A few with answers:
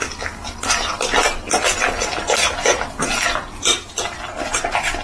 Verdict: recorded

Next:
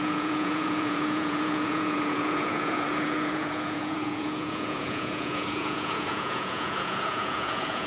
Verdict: remade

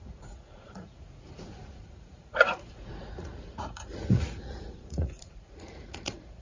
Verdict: remade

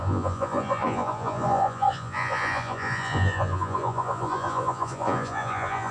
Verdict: remade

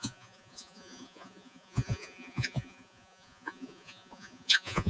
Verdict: remade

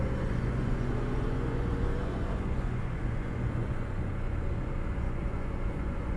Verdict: remade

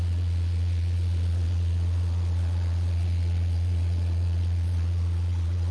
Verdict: remade